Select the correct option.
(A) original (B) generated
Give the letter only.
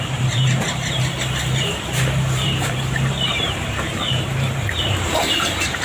B